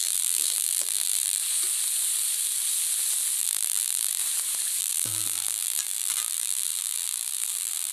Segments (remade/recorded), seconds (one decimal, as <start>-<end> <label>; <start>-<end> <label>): 0.0-1.4 remade; 1.4-3.4 recorded; 3.4-4.2 remade; 4.2-4.8 recorded; 4.8-7.9 remade